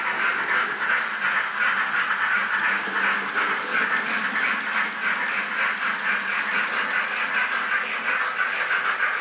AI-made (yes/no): no